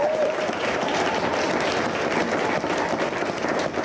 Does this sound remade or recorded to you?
recorded